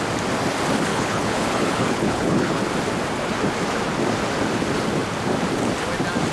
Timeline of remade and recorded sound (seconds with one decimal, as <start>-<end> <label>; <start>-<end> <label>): 0.0-0.9 recorded; 0.9-2.6 remade; 2.6-6.3 recorded

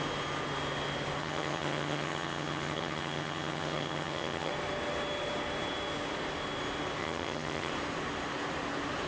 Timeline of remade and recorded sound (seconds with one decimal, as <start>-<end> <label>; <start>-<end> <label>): 0.0-1.2 recorded; 1.2-4.5 remade; 4.5-7.0 recorded; 7.0-7.7 remade; 7.7-9.1 recorded

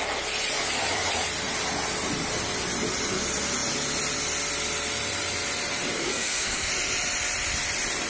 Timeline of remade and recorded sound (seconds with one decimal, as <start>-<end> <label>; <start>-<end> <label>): 0.0-6.0 recorded; 6.0-6.7 remade; 6.7-8.1 recorded

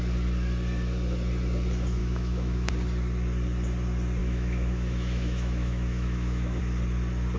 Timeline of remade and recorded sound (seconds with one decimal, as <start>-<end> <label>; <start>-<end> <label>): 0.0-2.0 recorded; 2.0-2.7 remade; 2.7-4.2 recorded; 4.2-6.6 remade; 6.6-7.4 recorded

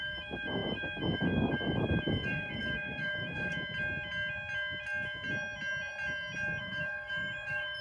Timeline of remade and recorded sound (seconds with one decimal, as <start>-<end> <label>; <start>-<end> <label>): 0.0-3.5 remade; 3.5-6.6 recorded; 6.6-7.8 remade

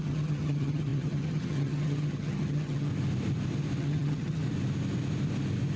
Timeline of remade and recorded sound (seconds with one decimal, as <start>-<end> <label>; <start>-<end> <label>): 0.0-2.9 remade; 2.9-3.8 recorded; 3.8-4.4 remade; 4.4-5.8 recorded

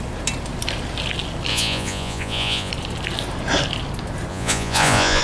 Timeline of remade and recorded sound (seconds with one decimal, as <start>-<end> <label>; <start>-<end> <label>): 0.0-1.5 recorded; 1.5-2.7 remade; 2.7-4.3 recorded; 4.3-5.2 remade

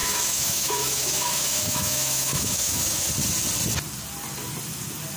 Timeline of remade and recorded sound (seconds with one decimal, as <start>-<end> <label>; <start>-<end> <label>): 0.0-3.1 remade; 3.1-5.2 recorded